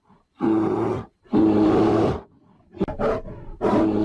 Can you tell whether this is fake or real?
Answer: real